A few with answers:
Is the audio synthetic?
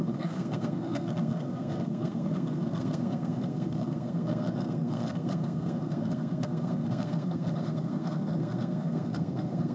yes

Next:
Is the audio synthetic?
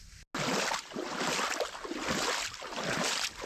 no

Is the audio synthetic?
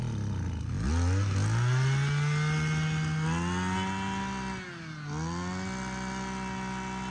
no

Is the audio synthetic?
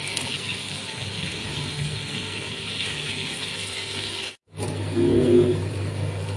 yes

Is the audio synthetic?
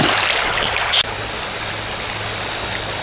no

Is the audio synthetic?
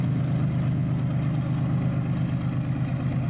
no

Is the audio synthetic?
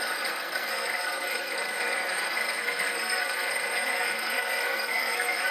yes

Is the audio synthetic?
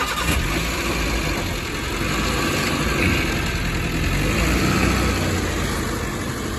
no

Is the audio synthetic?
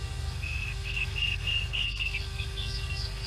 yes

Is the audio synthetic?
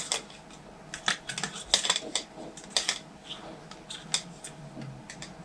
no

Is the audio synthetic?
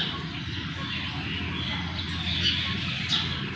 no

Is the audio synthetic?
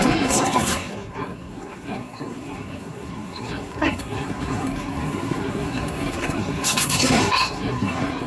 yes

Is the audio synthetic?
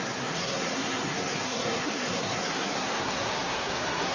yes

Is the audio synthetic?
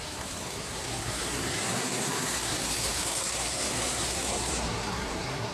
yes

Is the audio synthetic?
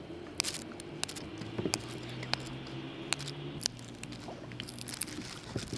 no